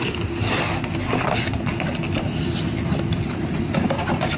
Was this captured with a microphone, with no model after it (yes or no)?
yes